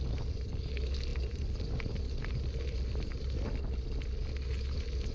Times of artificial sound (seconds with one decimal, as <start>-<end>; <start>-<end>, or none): none